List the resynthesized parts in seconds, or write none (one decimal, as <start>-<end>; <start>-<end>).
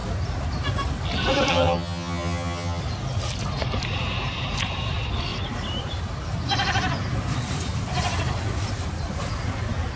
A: 1.5-2.8